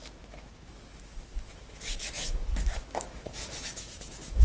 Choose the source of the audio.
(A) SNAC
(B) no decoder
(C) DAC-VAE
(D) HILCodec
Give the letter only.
C